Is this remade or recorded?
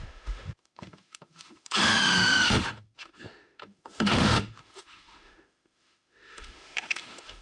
remade